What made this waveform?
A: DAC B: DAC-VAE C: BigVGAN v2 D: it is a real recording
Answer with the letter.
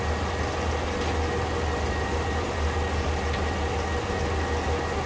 D